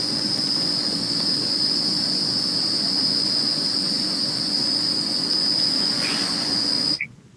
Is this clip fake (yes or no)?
yes